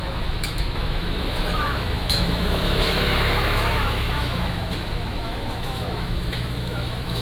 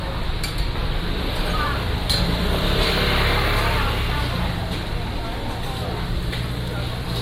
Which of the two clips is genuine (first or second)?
second